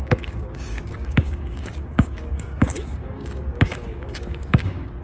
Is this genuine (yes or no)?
no